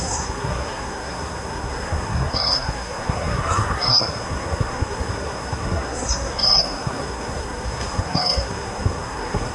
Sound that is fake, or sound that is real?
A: fake